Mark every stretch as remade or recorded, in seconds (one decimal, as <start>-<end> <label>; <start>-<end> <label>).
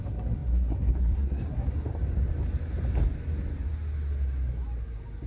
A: 0.0-1.9 remade; 1.9-5.3 recorded